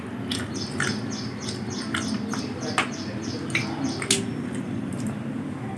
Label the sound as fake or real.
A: real